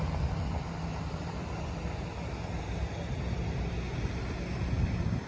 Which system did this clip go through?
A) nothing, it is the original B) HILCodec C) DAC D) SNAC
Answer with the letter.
A